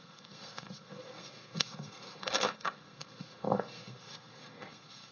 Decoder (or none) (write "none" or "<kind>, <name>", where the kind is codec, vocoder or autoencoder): codec, SNAC